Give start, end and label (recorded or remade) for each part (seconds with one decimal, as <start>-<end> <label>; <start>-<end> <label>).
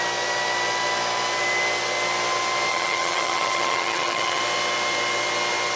0.0-2.7 recorded; 2.7-4.4 remade; 4.4-5.8 recorded